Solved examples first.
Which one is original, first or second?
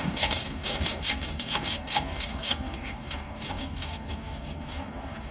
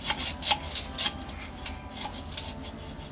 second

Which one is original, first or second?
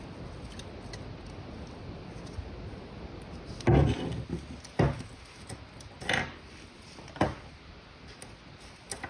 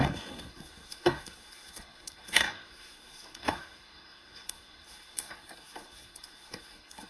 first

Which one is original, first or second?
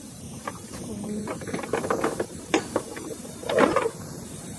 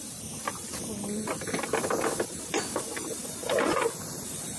second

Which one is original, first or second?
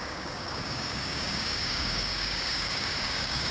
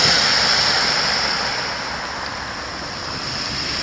second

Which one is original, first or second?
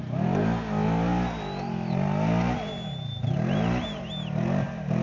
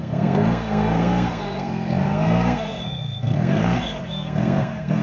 first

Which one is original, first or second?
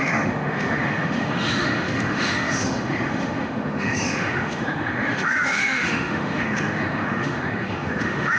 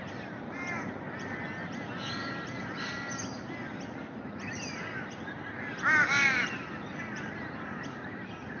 second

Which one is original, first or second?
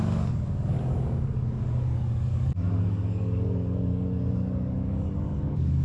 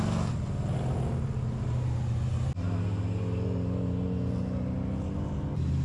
second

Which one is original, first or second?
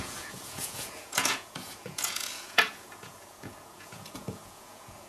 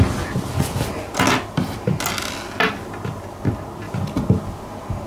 second